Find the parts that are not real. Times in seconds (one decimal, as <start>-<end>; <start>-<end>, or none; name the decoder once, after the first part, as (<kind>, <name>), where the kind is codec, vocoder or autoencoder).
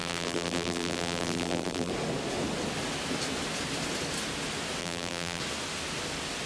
0.0-1.9 (vocoder, BigVGAN v2); 4.8-5.4